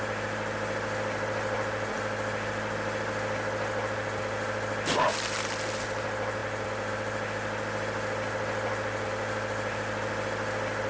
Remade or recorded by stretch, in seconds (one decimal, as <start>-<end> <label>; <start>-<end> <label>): 0.0-10.9 recorded